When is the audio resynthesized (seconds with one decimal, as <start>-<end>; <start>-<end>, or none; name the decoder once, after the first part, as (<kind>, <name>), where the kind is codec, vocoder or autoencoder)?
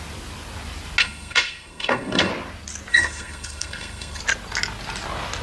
1.0-2.3 (codec, SNAC); 2.9-4.2